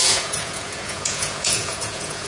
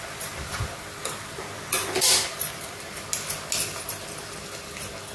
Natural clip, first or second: second